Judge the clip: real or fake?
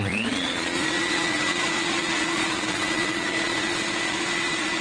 fake